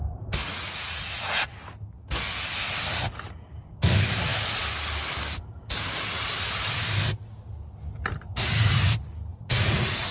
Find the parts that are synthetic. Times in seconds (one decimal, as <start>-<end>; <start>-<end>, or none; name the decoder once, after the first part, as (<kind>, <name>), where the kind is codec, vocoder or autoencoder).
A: 0.4-1.5 (vocoder, Vocos); 9.3-10.1